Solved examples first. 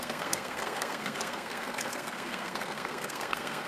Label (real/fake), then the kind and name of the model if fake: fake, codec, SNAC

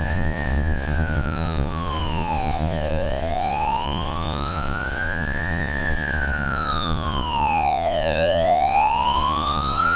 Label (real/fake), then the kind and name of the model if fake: fake, vocoder, Vocos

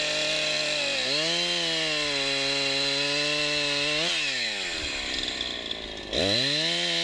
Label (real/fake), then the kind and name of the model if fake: real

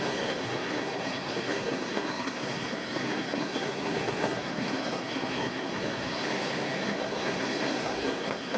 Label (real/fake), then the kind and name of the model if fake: fake, codec, SNAC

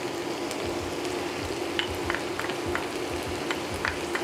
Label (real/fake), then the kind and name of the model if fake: real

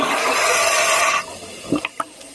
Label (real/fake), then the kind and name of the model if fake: real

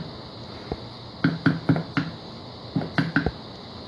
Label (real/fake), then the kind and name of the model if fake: real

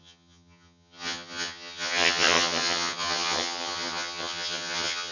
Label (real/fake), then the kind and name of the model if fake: fake, vocoder, HiFi-GAN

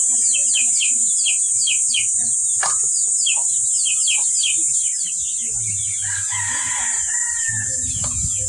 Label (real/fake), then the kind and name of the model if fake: real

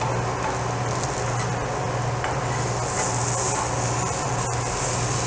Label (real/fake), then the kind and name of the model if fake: real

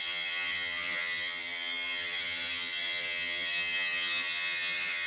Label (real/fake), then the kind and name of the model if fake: fake, vocoder, HiFi-GAN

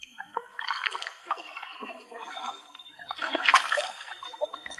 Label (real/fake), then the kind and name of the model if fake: fake, codec, SNAC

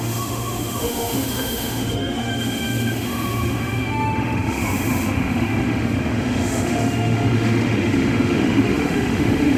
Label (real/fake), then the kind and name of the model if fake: fake, autoencoder, DAC-VAE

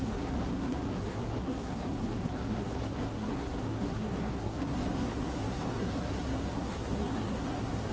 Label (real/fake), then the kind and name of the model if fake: fake, codec, SNAC